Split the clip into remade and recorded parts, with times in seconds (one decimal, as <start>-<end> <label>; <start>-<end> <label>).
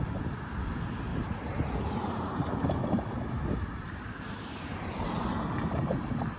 0.0-1.1 recorded; 1.1-4.9 remade; 4.9-6.4 recorded